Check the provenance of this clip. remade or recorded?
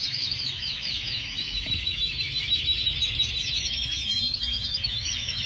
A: remade